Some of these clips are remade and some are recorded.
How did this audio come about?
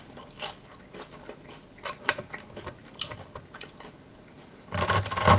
recorded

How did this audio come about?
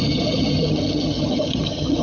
remade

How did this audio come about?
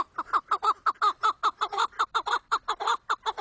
recorded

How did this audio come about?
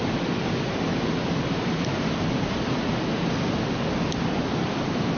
recorded